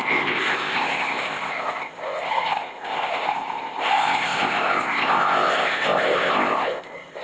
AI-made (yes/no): yes